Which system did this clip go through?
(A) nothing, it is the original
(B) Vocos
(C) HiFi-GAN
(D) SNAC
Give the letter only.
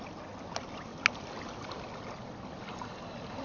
A